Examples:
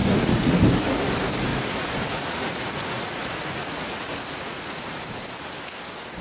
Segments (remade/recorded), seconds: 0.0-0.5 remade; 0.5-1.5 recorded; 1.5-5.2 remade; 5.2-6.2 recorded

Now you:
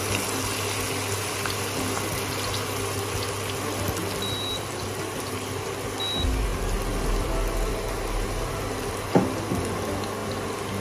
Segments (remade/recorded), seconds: 0.0-10.8 recorded

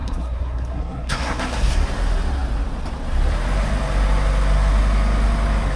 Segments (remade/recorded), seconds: 0.0-1.7 remade; 1.7-5.8 recorded

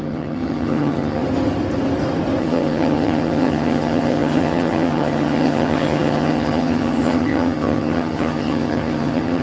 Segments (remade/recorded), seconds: 0.0-1.2 remade; 1.2-2.4 recorded; 2.4-9.4 remade

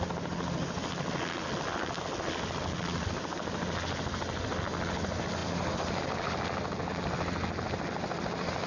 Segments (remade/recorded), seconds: 0.0-8.7 recorded

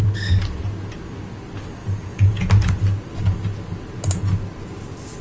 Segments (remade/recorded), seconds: 0.0-1.8 recorded; 1.8-2.5 remade; 2.5-5.2 recorded

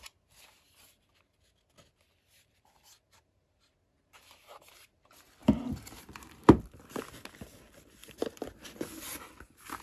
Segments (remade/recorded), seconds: 0.0-5.4 recorded; 5.4-6.9 remade; 6.9-8.0 recorded; 8.0-8.8 remade; 8.8-9.8 recorded

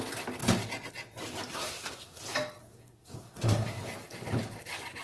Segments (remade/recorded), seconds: 0.0-1.5 recorded; 1.5-2.2 remade; 2.2-2.6 recorded; 2.6-3.8 remade; 3.8-5.0 recorded